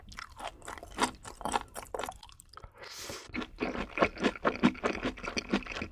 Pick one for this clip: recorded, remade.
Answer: recorded